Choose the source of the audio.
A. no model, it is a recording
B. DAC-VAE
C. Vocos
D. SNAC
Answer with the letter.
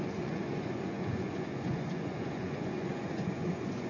C